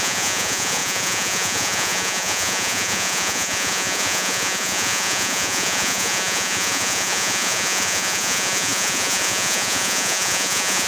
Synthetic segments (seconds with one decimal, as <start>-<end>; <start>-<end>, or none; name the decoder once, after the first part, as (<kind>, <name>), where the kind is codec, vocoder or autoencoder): 0.0-10.9 (vocoder, Vocos)